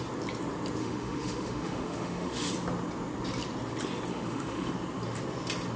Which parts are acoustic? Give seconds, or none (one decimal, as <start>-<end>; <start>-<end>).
0.0-0.8; 2.5-4.1; 4.7-5.8